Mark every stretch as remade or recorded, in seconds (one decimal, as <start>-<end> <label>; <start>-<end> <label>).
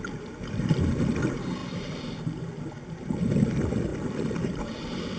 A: 0.0-5.2 recorded